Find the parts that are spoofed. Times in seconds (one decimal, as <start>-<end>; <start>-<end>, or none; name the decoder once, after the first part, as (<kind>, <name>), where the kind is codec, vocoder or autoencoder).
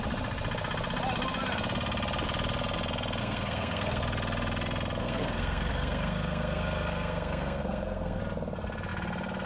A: 3.2-4.0 (codec, SNAC); 5.0-8.2